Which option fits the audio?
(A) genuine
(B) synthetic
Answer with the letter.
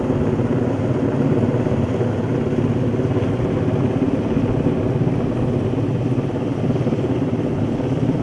A